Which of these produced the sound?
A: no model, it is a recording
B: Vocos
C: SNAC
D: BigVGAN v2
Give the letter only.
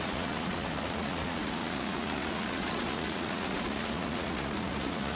B